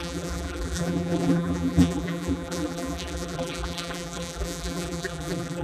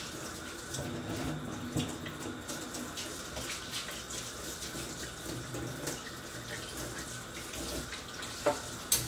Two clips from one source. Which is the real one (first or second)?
second